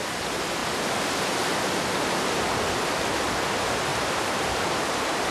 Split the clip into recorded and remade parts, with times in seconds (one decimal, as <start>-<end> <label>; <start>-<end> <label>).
0.0-3.9 recorded; 3.9-4.8 remade; 4.8-5.3 recorded